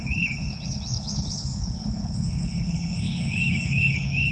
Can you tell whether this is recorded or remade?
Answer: remade